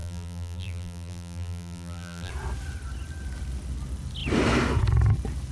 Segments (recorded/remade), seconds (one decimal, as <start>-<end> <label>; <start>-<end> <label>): 0.0-2.3 remade; 2.3-5.5 recorded